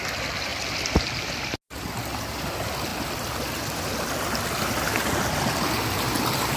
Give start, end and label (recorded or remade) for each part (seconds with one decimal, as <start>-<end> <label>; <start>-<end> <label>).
0.0-6.6 recorded